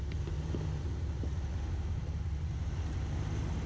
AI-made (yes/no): no